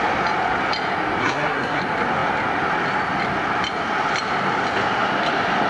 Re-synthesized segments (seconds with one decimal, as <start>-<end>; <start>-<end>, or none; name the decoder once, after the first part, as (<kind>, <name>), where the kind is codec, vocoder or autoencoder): 1.2-1.8 (codec, SNAC)